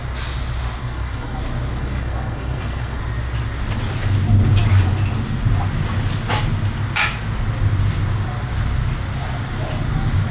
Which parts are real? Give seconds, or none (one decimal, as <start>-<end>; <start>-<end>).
0.0-0.8; 1.4-1.8; 3.0-10.3